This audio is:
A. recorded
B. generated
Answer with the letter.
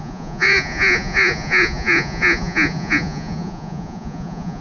B